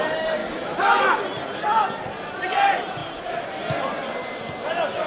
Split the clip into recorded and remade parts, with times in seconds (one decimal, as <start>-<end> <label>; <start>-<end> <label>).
0.0-0.4 recorded; 0.4-1.0 remade; 1.0-5.1 recorded